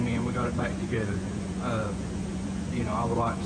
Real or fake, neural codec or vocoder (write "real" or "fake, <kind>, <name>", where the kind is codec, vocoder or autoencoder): fake, vocoder, Vocos